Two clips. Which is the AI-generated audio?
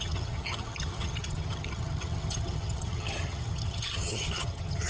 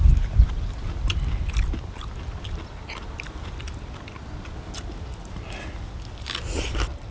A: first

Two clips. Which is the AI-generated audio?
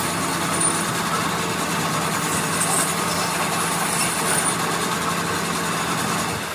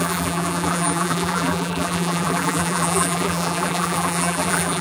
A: second